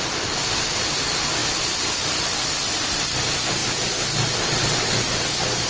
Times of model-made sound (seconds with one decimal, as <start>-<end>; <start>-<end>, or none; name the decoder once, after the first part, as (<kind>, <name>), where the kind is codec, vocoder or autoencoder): none

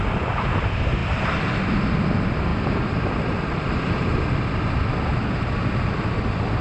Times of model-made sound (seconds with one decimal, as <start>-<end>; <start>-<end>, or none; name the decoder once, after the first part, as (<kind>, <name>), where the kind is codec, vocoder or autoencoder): 1.0-1.6 (vocoder, BigVGAN v2); 2.5-6.6